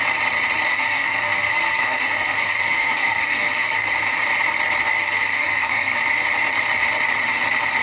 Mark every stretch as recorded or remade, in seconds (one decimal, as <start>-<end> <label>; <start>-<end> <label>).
0.0-0.7 recorded; 0.7-3.9 remade; 3.9-4.9 recorded; 4.9-6.0 remade; 6.0-7.8 recorded

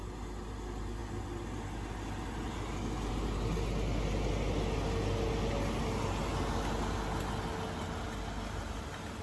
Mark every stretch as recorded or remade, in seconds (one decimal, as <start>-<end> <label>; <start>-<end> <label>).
0.0-9.2 recorded